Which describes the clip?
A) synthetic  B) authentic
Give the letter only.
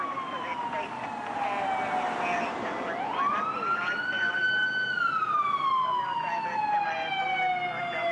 B